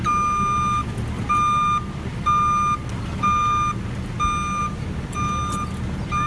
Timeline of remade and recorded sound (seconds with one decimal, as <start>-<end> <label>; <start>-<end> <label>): 0.0-6.3 recorded